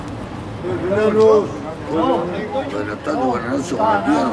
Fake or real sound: real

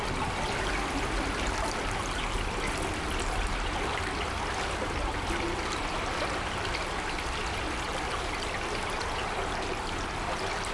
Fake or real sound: real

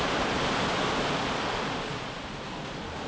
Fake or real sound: real